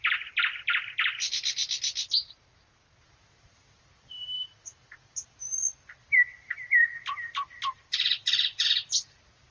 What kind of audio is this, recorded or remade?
recorded